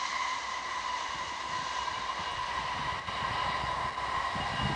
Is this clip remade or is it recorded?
recorded